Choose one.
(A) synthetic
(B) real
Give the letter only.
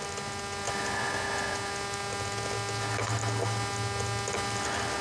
B